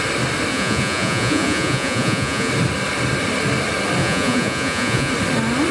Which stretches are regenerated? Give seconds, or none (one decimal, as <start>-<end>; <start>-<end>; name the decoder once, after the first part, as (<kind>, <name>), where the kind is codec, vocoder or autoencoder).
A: 0.5-2.5 (vocoder, Vocos); 4.0-5.1